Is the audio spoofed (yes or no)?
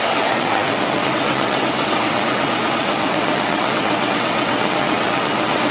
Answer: yes